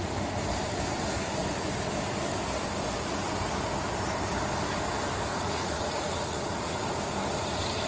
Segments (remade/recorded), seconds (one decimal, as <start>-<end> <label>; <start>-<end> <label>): 0.0-5.3 recorded; 5.3-6.8 remade; 6.8-7.9 recorded

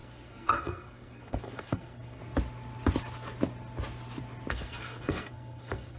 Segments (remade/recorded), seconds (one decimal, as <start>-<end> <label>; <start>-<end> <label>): 0.0-2.2 remade; 2.2-4.5 recorded; 4.5-6.0 remade

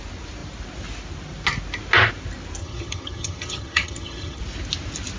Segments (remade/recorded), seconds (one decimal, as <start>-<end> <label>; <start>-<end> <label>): 0.0-2.6 recorded; 2.6-4.4 remade; 4.4-5.2 recorded

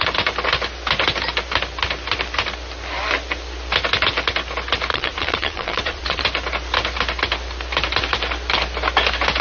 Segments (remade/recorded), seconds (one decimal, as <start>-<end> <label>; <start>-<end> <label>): 0.0-4.9 recorded; 4.9-6.2 remade; 6.2-9.4 recorded